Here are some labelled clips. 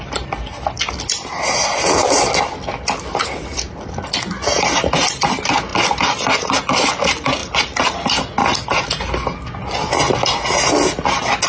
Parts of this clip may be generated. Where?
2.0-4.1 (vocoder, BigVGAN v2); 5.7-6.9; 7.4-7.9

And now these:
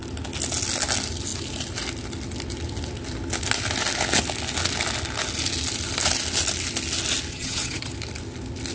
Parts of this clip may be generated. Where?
7.3-7.9 (vocoder, HiFi-GAN)